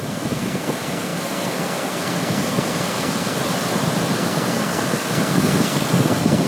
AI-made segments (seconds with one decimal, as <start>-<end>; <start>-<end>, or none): 0.0-3.4; 4.1-6.5